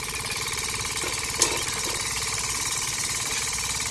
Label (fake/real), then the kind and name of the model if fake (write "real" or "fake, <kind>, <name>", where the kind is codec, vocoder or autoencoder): fake, vocoder, BigVGAN v2